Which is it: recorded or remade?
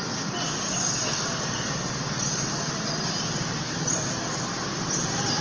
recorded